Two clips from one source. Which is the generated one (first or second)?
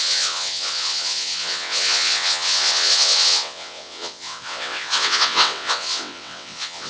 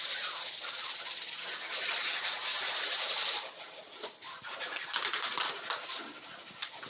first